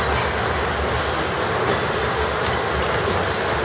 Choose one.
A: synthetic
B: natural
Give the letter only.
B